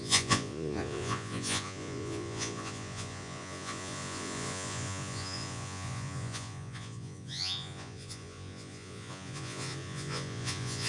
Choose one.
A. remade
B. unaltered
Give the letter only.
A